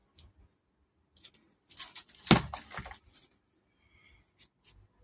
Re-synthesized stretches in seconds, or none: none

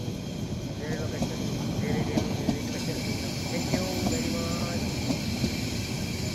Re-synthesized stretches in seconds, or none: none

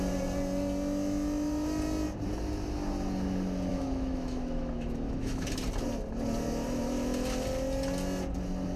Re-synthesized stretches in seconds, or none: 3.7-5.5